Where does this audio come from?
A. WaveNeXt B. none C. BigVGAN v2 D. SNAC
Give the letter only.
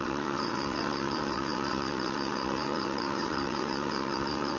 A